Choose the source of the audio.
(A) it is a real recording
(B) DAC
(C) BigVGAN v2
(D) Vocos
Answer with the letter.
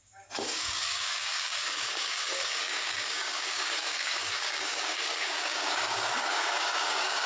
B